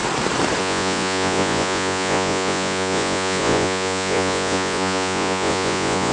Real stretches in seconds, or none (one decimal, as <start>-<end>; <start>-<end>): 0.0-0.6